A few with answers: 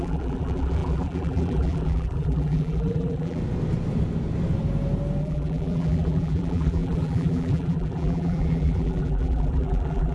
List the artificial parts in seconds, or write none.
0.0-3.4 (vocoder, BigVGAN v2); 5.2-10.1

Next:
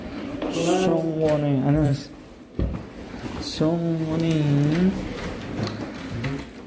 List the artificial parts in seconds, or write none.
0.9-4.9 (vocoder, BigVGAN v2)